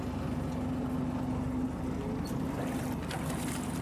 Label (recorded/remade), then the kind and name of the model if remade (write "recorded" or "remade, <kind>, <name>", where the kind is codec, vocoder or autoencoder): recorded